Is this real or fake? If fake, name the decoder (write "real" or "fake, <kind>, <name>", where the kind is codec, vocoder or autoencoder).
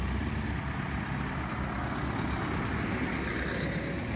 real